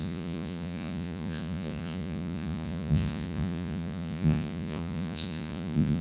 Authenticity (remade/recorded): remade